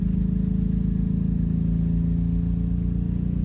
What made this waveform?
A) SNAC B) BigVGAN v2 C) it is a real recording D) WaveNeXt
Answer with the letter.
C